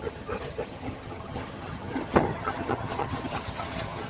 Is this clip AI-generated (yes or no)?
yes